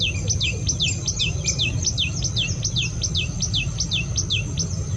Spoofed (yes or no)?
no